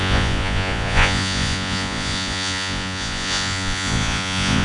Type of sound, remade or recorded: remade